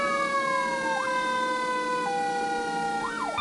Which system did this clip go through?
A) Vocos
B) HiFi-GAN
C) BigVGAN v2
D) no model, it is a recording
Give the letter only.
D